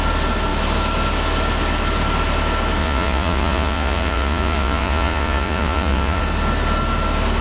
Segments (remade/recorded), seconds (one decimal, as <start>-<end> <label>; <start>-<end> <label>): 0.0-2.8 recorded; 2.8-6.2 remade; 6.2-7.4 recorded